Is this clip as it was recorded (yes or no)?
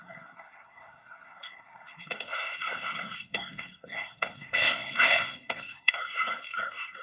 no